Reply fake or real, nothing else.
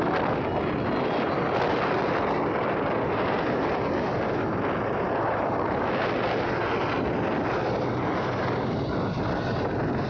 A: real